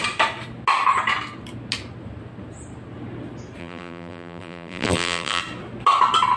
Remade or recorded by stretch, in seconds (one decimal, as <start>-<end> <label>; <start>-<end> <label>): 0.0-3.6 recorded; 3.6-5.4 remade; 5.4-6.4 recorded